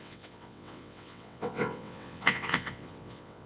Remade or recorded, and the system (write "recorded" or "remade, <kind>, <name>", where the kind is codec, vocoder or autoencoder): remade, vocoder, WaveNeXt